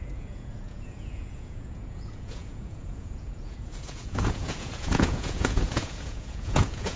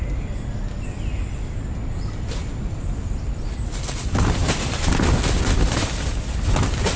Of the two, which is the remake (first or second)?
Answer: first